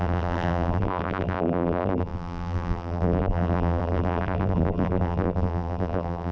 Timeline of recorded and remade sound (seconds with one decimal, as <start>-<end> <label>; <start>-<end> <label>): 0.0-6.3 remade